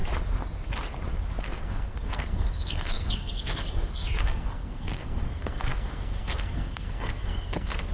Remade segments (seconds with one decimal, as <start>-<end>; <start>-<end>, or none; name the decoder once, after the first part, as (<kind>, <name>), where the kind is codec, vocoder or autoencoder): 1.4-7.9 (codec, SNAC)